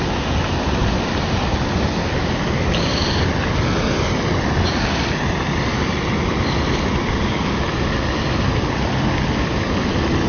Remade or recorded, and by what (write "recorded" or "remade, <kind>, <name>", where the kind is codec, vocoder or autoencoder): recorded